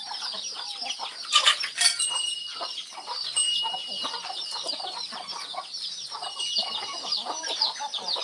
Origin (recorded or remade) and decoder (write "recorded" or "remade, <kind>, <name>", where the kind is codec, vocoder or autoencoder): remade, vocoder, BigVGAN v2